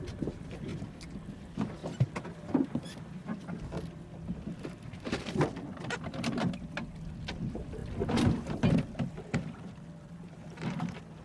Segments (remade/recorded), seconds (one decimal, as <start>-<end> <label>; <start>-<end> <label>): 0.0-1.8 remade; 1.8-2.3 recorded; 2.3-11.2 remade